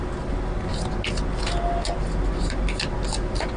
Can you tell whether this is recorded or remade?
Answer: recorded